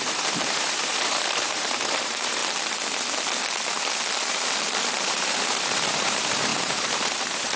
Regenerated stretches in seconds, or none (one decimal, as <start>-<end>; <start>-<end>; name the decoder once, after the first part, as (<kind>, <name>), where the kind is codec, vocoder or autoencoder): 0.0-2.4 (vocoder, BigVGAN v2); 5.0-7.6